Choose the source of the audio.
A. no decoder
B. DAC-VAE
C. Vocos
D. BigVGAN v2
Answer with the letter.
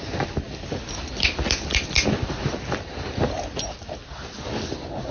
A